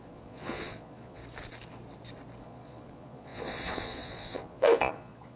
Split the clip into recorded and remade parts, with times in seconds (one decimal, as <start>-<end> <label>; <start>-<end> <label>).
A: 0.0-1.2 remade; 1.2-2.4 recorded; 2.4-5.4 remade